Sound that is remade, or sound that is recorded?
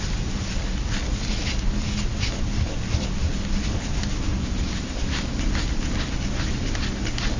recorded